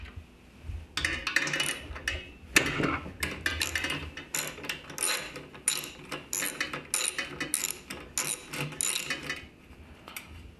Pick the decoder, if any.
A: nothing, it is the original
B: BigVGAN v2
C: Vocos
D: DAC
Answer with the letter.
A